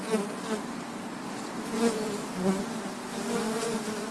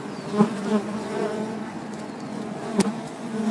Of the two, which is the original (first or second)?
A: first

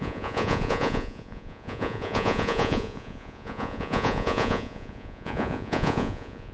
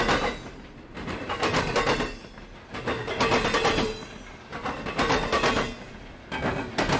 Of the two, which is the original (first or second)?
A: second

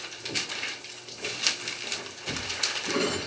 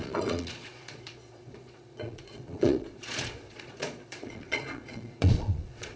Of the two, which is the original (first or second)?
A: first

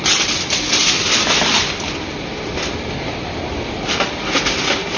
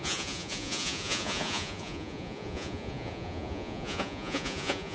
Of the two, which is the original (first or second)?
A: first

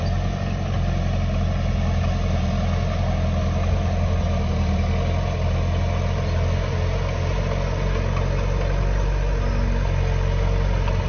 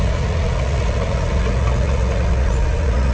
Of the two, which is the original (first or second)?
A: first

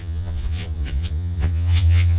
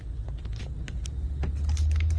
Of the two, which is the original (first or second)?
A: second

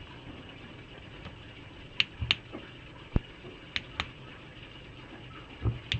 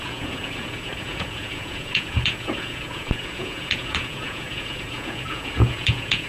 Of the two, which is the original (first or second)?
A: first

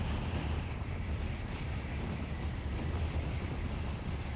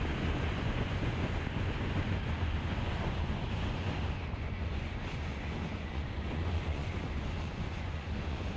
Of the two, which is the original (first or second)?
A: first